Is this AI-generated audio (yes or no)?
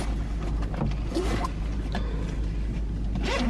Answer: no